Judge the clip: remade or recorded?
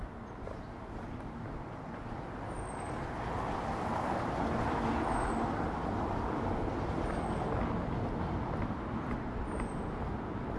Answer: recorded